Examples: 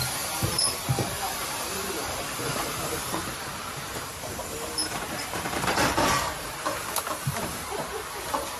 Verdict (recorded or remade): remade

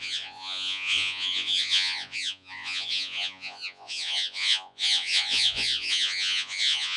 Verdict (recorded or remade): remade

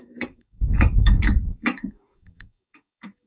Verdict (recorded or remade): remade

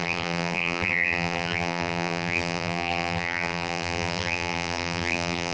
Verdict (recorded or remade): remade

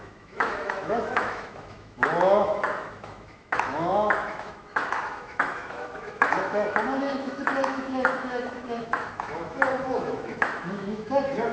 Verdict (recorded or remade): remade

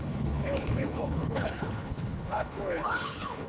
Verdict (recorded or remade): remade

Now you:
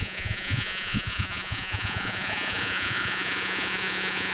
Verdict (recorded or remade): remade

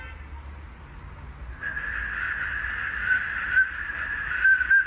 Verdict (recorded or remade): recorded